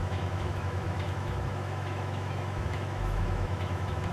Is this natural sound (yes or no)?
no